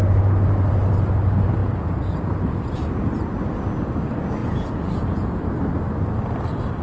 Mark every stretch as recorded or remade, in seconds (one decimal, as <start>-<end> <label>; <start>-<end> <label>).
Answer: 0.0-1.6 recorded; 1.6-2.9 remade; 2.9-4.4 recorded; 4.4-5.4 remade; 5.4-6.8 recorded

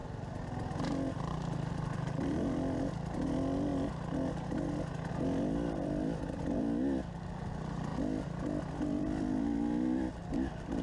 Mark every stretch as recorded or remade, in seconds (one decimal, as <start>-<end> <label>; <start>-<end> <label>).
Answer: 0.0-1.7 recorded; 1.7-3.7 remade; 3.7-5.1 recorded; 5.1-7.9 remade; 7.9-8.6 recorded; 8.6-10.8 remade

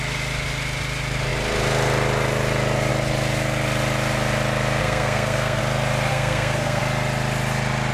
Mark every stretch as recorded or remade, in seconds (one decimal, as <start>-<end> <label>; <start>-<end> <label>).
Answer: 0.0-4.8 recorded; 4.8-5.6 remade; 5.6-6.1 recorded; 6.1-6.8 remade; 6.8-7.9 recorded

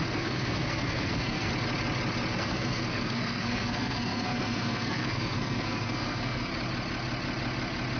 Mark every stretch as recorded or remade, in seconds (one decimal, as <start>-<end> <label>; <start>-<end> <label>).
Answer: 0.0-1.5 remade; 1.5-2.3 recorded; 2.3-6.5 remade; 6.5-8.0 recorded

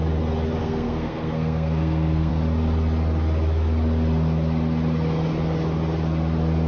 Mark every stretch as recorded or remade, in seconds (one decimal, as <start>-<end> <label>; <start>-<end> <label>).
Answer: 0.0-0.6 recorded; 0.6-2.3 remade; 2.3-6.7 recorded

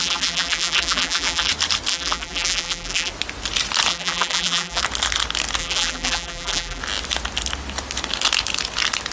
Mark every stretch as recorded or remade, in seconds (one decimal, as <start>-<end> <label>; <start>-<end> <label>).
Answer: 0.0-1.5 remade; 1.5-1.9 recorded; 1.9-3.1 remade; 3.1-3.9 recorded; 3.9-4.8 remade; 4.8-5.6 recorded; 5.6-6.8 remade; 6.8-9.1 recorded

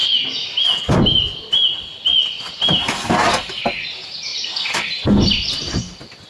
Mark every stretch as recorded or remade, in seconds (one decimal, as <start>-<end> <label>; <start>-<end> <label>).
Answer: 0.0-6.3 recorded

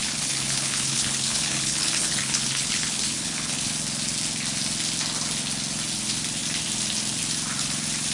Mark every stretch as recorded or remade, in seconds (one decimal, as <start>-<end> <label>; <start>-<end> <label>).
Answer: 0.0-3.7 remade; 3.7-8.1 recorded